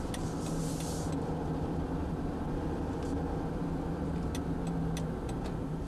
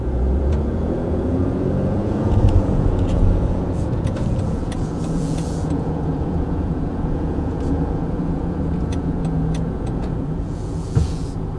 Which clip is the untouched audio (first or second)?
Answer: first